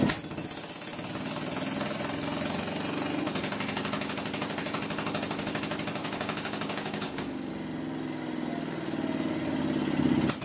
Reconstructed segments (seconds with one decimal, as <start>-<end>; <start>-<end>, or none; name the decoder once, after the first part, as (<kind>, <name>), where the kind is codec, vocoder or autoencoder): 6.0-7.5 (codec, DAC)